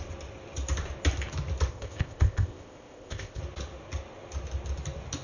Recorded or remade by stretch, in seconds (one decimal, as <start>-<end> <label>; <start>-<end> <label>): 0.0-1.7 recorded; 1.7-3.4 remade; 3.4-5.2 recorded